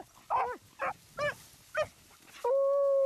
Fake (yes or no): no